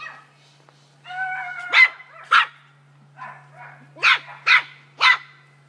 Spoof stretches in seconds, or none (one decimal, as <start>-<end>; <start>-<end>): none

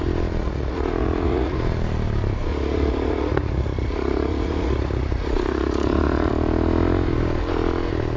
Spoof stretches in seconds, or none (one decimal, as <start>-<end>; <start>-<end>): 0.4-1.6; 2.5-6.3

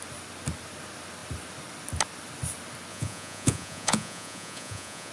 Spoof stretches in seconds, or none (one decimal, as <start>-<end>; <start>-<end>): 2.9-5.1

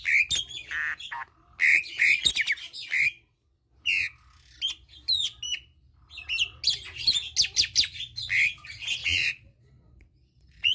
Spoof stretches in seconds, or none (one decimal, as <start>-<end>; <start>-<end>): 1.7-2.3; 9.0-10.7

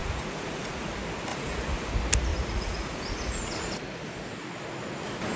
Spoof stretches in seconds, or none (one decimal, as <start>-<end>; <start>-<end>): 0.0-0.9; 1.3-1.9; 2.3-3.8

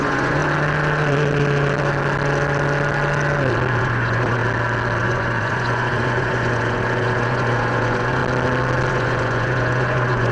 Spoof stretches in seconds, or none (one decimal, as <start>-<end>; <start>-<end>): 0.0-0.4; 3.8-4.4; 5.0-8.2; 8.9-10.3